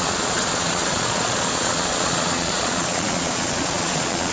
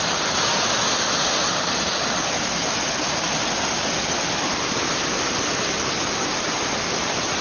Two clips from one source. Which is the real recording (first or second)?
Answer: second